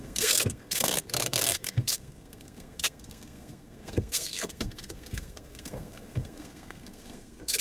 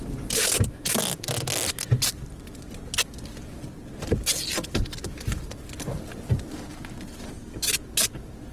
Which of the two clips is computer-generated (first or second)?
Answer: first